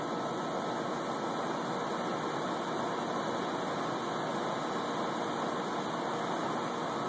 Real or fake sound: real